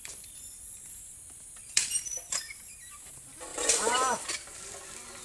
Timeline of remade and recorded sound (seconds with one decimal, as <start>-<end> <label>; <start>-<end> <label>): 0.0-3.1 remade; 3.1-3.5 recorded; 3.5-4.3 remade; 4.3-5.2 recorded